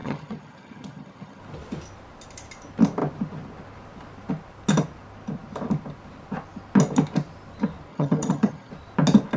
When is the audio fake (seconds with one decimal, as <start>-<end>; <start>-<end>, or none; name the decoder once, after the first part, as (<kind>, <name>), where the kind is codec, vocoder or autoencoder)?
0.0-1.4 (vocoder, HiFi-GAN); 7.9-8.7